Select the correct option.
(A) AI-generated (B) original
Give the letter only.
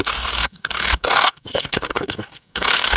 A